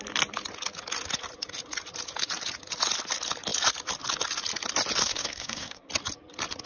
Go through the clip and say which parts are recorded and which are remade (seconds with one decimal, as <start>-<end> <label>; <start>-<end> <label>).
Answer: 0.0-5.0 recorded; 5.0-5.9 remade; 5.9-6.7 recorded